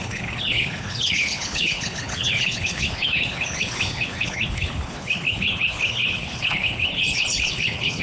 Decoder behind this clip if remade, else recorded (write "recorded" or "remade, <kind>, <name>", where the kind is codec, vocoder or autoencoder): remade, codec, HILCodec